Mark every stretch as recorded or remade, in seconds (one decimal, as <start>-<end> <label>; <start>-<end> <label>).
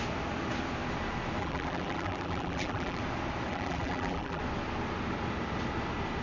0.0-1.4 recorded; 1.4-3.0 remade; 3.0-3.5 recorded; 3.5-4.4 remade; 4.4-6.2 recorded